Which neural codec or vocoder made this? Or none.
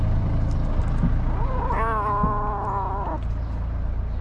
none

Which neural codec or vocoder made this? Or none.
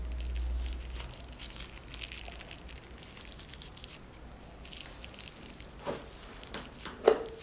none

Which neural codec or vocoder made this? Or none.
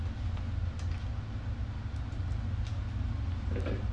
none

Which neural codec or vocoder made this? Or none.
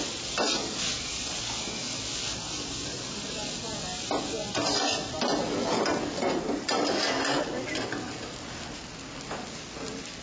none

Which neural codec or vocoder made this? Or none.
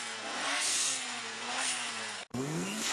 codec, SNAC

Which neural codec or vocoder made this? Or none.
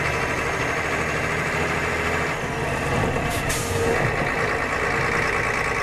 none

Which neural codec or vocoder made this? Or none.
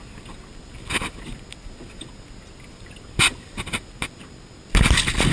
none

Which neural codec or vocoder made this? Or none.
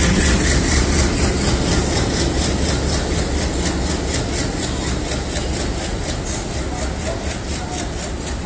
none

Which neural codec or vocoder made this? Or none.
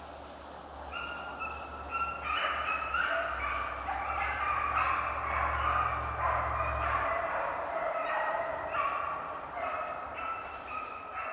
none